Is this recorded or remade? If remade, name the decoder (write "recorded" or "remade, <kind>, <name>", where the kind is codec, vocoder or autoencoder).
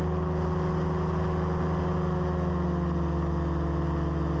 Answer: recorded